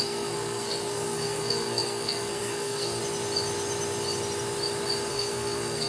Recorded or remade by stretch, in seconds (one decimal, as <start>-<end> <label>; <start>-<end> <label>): 0.0-3.0 remade; 3.0-5.1 recorded; 5.1-5.9 remade